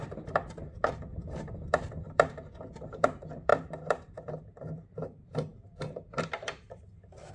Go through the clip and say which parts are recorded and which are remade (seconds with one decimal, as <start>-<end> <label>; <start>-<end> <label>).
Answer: 0.0-7.3 remade